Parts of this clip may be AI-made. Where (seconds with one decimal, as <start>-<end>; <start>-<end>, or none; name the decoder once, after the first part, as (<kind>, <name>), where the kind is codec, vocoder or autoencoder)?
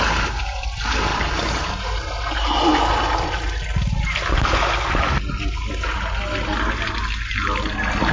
1.1-1.7 (vocoder, BigVGAN v2)